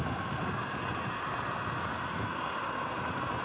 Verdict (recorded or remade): recorded